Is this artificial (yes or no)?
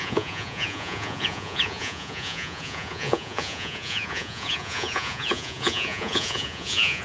yes